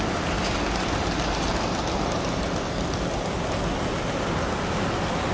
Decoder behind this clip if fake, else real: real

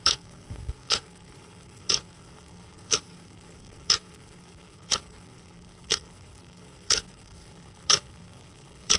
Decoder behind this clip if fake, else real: fake, codec, SNAC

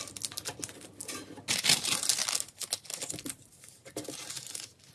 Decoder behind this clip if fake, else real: real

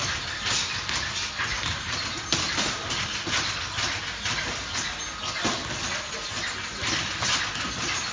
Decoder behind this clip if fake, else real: real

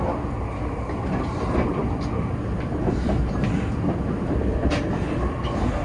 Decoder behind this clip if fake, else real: real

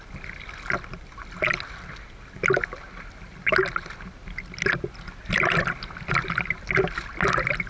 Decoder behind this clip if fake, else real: real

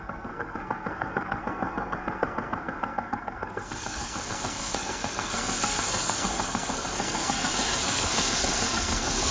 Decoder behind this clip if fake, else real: fake, codec, SNAC